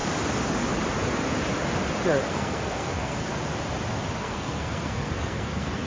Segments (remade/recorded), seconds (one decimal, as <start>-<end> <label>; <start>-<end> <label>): 0.0-2.3 recorded; 2.3-3.3 remade; 3.3-4.2 recorded; 4.2-5.9 remade